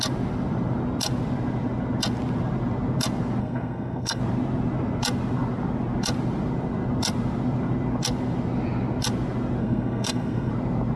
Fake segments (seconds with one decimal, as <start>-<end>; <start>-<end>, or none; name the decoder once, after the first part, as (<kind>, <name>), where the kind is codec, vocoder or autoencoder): 3.4-4.2 (codec, SNAC); 9.6-10.5